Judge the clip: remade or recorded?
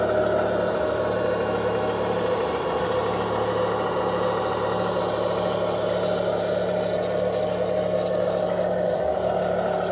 recorded